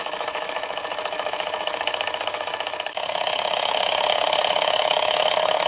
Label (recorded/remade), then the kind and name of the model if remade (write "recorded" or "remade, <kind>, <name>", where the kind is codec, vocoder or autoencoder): remade, autoencoder, DAC-VAE